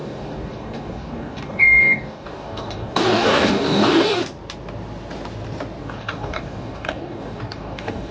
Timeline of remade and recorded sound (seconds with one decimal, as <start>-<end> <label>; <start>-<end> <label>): 0.0-4.2 remade; 4.2-5.8 recorded; 5.8-8.1 remade